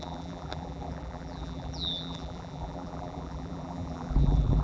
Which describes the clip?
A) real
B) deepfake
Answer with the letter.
B